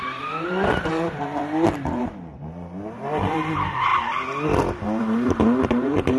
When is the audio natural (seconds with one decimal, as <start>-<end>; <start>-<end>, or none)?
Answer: 1.4-2.0; 3.9-5.0